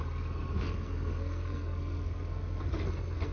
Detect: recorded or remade remade